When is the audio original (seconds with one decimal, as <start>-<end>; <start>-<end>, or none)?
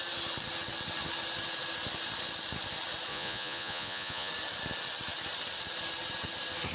0.0-3.1; 4.3-6.7